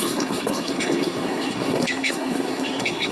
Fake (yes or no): yes